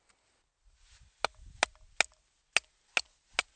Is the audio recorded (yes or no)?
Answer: yes